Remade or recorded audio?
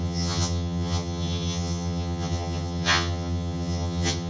remade